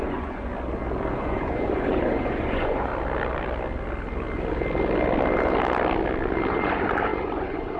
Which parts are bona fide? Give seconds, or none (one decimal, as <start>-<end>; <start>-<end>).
0.5-1.1; 2.9-6.5